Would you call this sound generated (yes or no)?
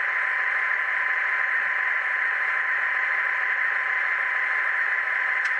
yes